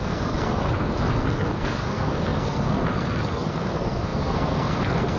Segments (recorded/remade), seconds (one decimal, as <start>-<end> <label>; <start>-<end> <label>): 0.0-5.2 remade